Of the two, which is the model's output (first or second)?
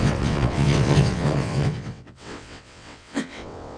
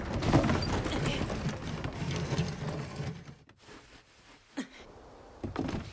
first